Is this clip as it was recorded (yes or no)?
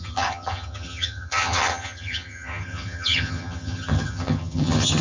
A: no